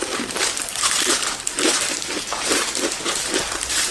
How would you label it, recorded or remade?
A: remade